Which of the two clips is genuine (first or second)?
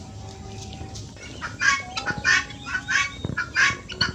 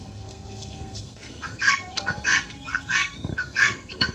first